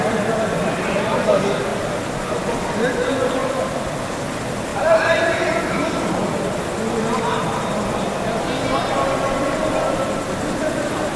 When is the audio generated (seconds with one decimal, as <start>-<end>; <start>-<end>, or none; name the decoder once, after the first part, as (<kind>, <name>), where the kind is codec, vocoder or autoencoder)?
1.7-2.3 (vocoder, BigVGAN v2); 3.4-4.0; 4.7-6.6